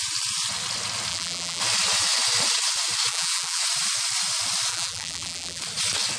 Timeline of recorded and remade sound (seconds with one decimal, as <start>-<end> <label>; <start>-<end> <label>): 0.0-1.1 recorded; 1.1-1.6 remade; 1.6-3.1 recorded; 3.1-3.6 remade; 3.6-4.7 recorded; 4.7-5.6 remade; 5.6-6.2 recorded